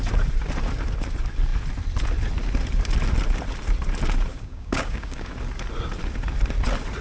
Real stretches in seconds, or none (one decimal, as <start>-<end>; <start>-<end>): 0.0-4.3; 5.3-7.0